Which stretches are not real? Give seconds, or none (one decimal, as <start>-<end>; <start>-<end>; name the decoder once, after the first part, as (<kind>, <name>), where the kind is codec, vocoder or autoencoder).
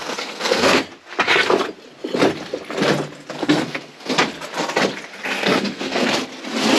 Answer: 0.0-0.8 (codec, SNAC); 3.4-4.1; 5.1-6.1